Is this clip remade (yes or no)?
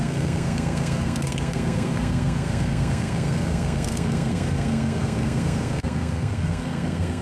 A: yes